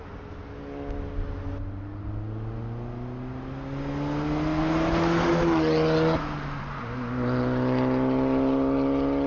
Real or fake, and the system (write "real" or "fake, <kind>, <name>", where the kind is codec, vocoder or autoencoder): real